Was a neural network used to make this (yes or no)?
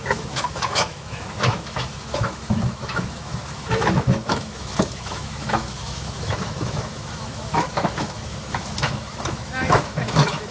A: yes